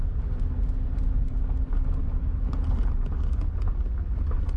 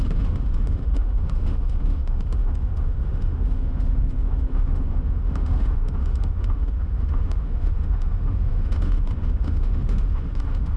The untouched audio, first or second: first